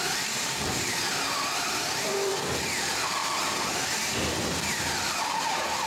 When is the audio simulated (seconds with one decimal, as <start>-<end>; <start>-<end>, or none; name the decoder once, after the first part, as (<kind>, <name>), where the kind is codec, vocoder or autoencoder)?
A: 1.1-2.4 (vocoder, BigVGAN v2); 3.2-5.1